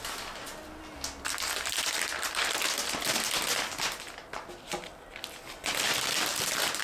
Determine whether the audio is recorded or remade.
recorded